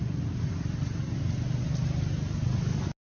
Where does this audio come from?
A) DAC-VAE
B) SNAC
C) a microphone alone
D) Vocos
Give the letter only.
C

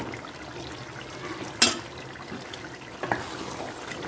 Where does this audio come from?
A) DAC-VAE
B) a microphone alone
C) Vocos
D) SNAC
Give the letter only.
B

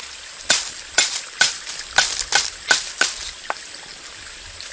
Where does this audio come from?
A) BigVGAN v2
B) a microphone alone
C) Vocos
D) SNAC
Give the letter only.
B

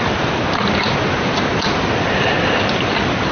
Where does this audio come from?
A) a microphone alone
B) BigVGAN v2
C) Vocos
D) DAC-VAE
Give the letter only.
A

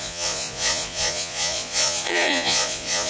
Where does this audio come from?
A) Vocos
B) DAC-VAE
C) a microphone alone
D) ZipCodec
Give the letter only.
A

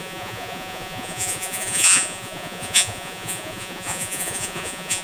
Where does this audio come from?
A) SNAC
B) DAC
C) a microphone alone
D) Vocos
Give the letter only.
D